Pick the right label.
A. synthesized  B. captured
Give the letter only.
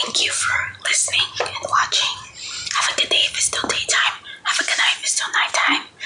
A